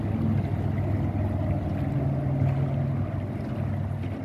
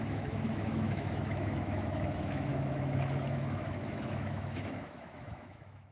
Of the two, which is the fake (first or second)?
second